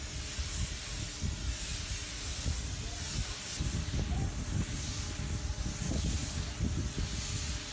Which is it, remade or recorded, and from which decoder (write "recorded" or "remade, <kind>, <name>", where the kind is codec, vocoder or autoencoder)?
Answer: recorded